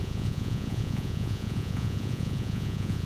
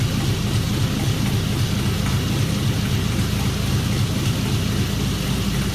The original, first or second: second